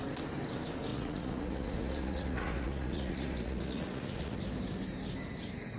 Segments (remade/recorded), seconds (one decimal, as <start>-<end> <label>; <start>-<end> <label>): 0.0-0.9 recorded; 0.9-4.4 remade; 4.4-5.8 recorded